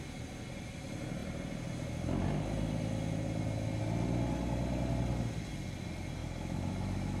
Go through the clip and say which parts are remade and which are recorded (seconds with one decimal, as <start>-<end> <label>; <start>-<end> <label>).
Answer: 0.0-6.2 recorded; 6.2-7.2 remade